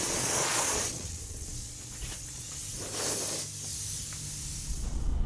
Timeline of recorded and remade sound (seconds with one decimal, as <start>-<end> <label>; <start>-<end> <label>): 0.0-2.6 remade; 2.6-4.7 recorded; 4.7-5.3 remade